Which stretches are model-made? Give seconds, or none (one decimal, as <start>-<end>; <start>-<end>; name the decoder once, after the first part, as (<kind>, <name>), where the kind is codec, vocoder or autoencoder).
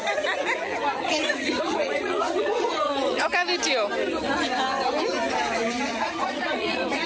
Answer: 0.9-3.3 (vocoder, Vocos); 5.9-7.1